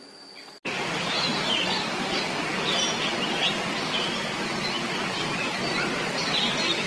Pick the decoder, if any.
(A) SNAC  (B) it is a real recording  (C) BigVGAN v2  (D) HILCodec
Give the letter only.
B